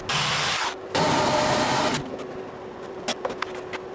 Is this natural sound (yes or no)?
yes